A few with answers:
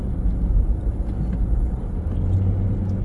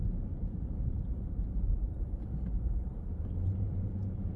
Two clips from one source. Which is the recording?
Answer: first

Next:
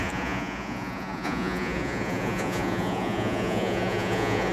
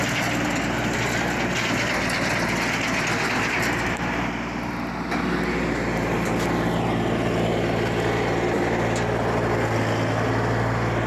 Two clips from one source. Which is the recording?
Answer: second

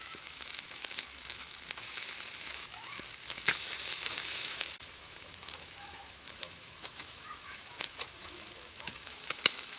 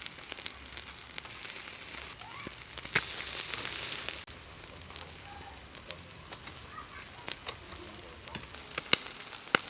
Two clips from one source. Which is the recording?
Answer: second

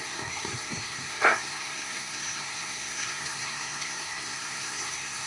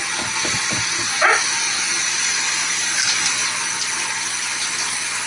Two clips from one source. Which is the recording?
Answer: second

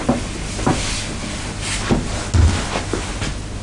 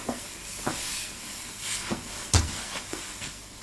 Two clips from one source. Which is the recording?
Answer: first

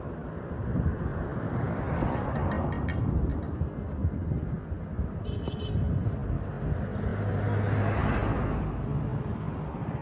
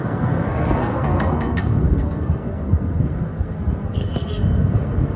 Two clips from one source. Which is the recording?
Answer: first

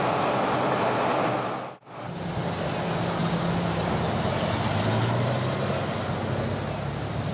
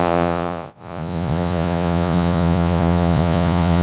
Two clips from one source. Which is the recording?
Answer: first